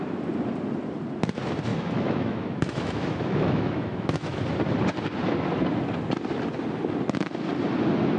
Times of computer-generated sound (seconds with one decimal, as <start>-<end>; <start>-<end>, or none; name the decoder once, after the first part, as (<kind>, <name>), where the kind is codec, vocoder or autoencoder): 1.7-4.4 (autoencoder, DAC-VAE)